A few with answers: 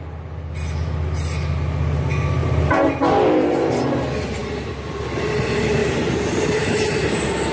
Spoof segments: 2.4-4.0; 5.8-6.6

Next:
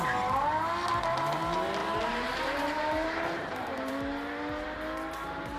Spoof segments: 1.8-3.9

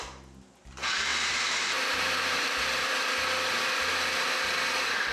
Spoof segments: 1.1-2.9

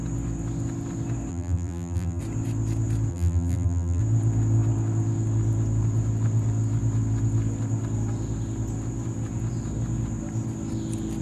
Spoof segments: 1.3-2.2; 3.1-4.0